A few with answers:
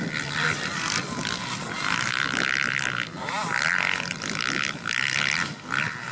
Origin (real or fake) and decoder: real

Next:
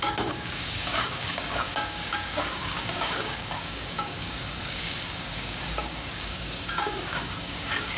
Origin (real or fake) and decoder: fake, codec, DAC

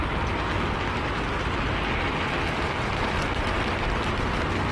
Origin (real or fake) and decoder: real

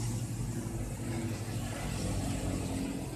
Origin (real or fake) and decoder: real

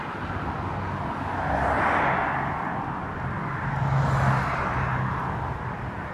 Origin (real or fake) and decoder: real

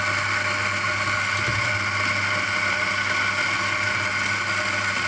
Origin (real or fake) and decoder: real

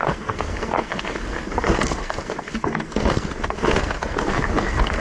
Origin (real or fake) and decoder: fake, codec, SNAC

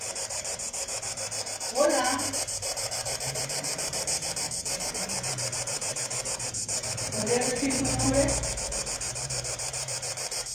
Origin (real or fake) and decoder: fake, vocoder, BigVGAN v2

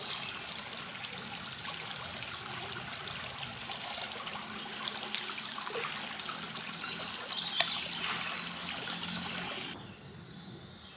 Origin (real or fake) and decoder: real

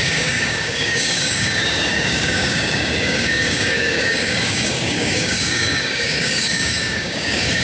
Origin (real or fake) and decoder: fake, codec, DAC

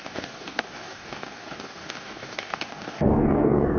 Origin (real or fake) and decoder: fake, codec, DAC